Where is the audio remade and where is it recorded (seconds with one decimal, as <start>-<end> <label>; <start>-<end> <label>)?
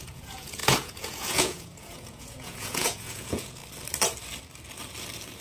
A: 0.0-3.6 remade; 3.6-5.4 recorded